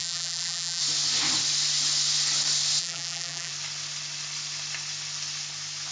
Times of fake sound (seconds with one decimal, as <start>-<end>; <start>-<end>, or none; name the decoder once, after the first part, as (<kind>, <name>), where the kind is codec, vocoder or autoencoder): 0.0-0.8 (vocoder, BigVGAN v2); 2.8-3.5